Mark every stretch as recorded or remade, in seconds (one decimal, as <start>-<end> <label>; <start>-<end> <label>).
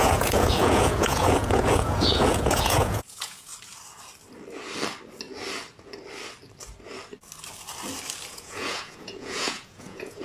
0.0-3.5 remade; 3.5-8.3 recorded; 8.3-10.2 remade